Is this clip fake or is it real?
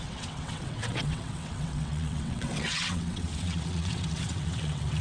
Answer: fake